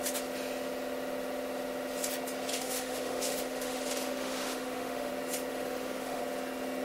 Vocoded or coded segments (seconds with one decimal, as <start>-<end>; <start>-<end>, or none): 2.5-5.1; 5.5-6.2